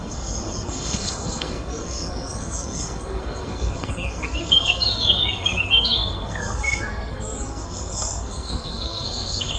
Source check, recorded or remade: remade